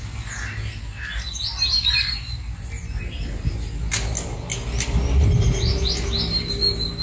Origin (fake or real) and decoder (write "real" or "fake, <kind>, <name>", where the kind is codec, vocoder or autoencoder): real